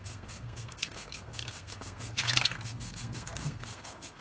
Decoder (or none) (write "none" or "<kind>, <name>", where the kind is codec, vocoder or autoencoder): codec, SNAC